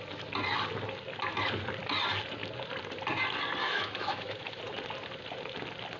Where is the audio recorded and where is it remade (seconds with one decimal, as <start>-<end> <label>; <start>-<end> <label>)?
0.0-3.6 recorded; 3.6-4.6 remade; 4.6-6.0 recorded